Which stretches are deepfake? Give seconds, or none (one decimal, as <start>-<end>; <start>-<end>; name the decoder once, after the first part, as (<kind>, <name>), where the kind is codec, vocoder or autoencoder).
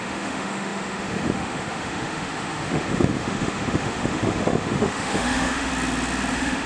0.0-5.7 (autoencoder, DAC-VAE); 6.3-6.7